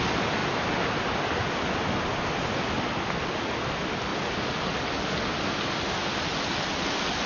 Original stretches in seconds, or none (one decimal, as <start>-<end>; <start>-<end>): 0.0-7.3

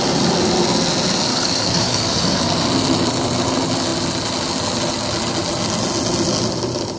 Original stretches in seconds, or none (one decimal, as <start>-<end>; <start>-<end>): 0.0-1.3; 2.4-7.0

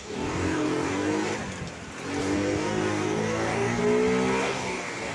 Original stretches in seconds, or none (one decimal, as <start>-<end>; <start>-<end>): 1.3-2.2; 3.8-4.4

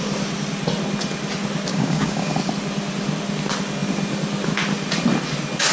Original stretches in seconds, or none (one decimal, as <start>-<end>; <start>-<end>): 0.0-1.7; 2.3-5.7

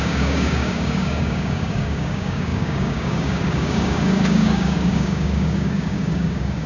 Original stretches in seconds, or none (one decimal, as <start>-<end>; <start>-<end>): none